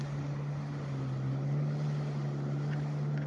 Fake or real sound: real